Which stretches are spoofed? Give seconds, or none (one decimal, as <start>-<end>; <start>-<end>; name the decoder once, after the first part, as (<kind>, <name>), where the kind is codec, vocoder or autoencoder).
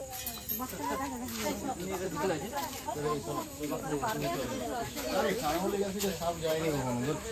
3.1-7.3 (autoencoder, DAC-VAE)